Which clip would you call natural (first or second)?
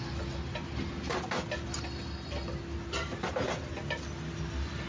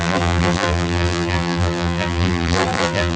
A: first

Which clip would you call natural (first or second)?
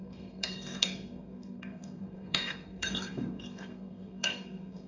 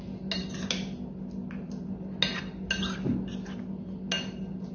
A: second